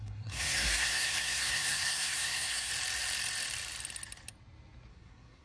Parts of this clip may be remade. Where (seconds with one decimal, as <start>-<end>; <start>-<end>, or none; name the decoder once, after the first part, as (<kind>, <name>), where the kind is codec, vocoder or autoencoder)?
0.0-2.7 (codec, SNAC); 4.9-5.4